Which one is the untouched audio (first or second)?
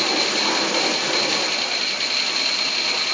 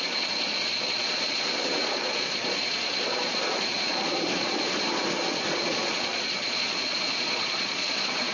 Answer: first